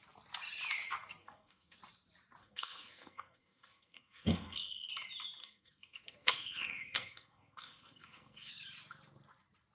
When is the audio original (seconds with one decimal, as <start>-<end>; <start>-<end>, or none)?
0.0-1.2; 1.8-2.4; 4.9-5.4; 8.5-9.7